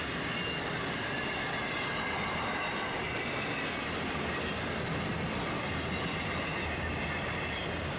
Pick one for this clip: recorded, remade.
recorded